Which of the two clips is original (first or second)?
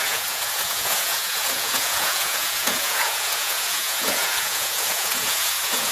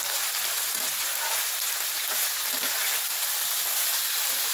second